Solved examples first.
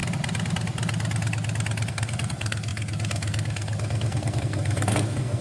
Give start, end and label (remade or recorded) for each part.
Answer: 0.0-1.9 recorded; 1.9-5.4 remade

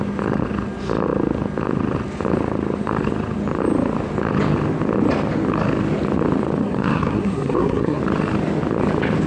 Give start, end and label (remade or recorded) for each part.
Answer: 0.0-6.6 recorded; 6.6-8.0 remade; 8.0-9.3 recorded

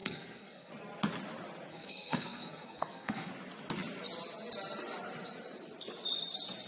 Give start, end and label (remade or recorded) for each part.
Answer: 0.0-0.7 remade; 0.7-1.7 recorded; 1.7-3.3 remade; 3.3-6.7 recorded

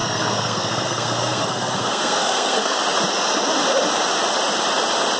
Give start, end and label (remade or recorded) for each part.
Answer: 0.0-2.8 remade; 2.8-5.2 recorded